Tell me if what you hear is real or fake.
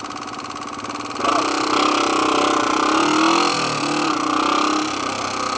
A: real